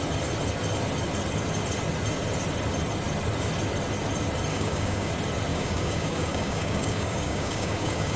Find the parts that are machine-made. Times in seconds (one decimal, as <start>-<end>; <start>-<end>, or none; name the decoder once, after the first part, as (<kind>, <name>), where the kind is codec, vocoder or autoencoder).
4.5-5.1 (codec, DAC); 5.5-8.2